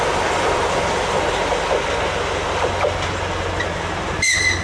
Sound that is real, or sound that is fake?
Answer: real